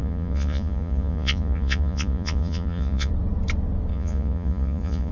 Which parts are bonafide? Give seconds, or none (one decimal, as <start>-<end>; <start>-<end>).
3.1-3.9